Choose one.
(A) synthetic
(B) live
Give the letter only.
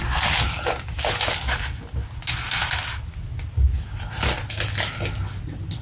B